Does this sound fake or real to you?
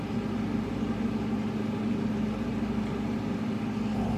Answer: real